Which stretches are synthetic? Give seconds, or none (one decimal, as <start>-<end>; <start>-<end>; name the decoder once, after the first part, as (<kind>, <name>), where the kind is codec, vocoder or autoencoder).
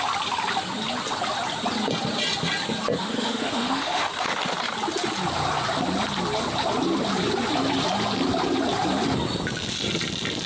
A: 3.0-4.1 (autoencoder, DAC-VAE)